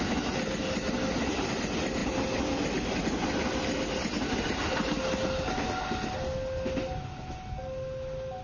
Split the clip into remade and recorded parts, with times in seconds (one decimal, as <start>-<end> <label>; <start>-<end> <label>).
0.0-8.4 recorded